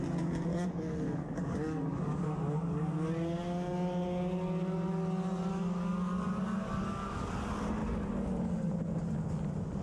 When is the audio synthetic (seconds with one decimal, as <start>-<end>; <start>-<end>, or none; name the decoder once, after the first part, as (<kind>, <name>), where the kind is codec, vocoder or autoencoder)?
0.5-3.1 (codec, DAC); 5.5-7.3; 7.8-8.7